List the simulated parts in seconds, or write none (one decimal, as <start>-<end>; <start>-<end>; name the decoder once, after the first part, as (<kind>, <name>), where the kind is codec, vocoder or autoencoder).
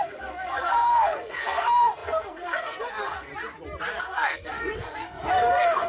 0.0-3.3 (codec, SNAC); 4.0-5.9